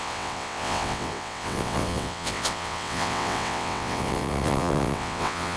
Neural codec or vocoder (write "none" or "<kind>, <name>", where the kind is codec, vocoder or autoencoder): vocoder, WaveNeXt